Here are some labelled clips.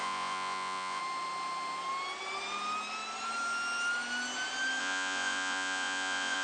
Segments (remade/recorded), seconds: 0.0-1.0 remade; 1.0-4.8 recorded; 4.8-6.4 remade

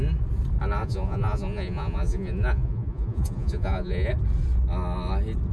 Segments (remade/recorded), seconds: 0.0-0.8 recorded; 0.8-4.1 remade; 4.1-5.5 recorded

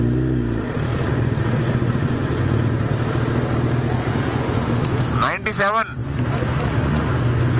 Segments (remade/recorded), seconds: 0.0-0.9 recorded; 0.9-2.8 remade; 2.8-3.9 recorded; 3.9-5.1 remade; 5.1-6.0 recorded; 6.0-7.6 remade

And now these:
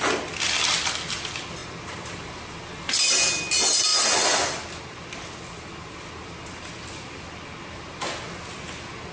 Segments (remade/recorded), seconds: 0.0-9.1 recorded

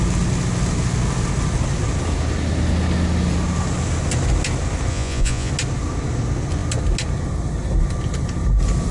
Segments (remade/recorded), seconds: 0.0-4.9 recorded; 4.9-5.5 remade; 5.5-8.9 recorded